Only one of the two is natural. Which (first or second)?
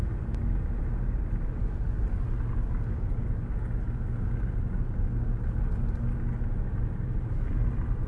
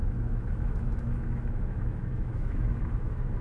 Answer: first